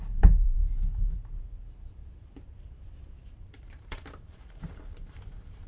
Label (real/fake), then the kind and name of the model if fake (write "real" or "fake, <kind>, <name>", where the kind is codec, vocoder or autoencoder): fake, vocoder, BigVGAN v2